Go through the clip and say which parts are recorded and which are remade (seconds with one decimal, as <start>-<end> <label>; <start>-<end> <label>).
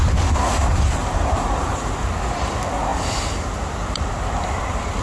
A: 0.0-1.0 recorded; 1.0-1.9 remade; 1.9-5.0 recorded